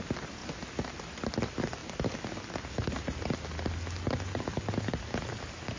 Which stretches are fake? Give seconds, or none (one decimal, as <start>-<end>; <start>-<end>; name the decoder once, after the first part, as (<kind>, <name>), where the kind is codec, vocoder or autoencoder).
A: none